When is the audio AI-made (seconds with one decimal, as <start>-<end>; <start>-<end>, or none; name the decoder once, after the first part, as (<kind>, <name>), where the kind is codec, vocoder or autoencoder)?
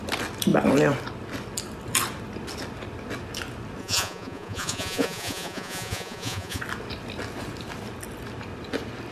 3.8-6.6 (vocoder, Vocos)